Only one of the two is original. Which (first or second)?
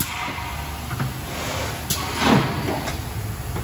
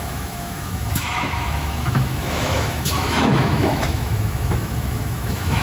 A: first